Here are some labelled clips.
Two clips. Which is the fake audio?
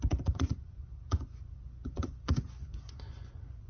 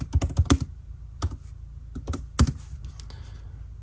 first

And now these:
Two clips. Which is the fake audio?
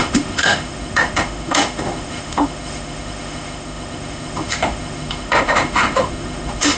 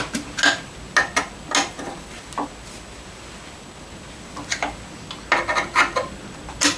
first